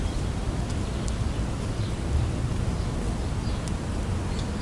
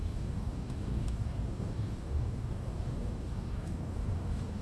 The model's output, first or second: second